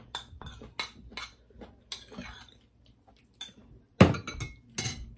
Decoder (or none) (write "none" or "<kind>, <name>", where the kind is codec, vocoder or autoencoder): none